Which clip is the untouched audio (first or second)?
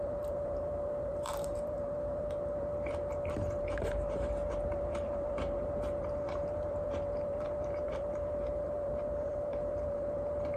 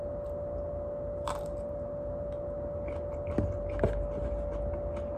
second